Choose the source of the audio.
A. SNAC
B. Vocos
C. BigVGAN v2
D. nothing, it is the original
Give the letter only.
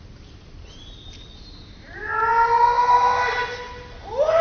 D